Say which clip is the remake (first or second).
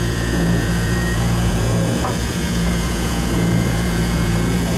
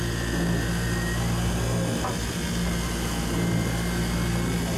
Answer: first